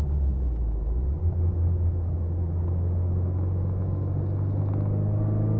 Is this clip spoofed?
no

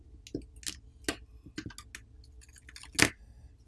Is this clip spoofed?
no